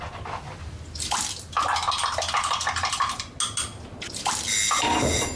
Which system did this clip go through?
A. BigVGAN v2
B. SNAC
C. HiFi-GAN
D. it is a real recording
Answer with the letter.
D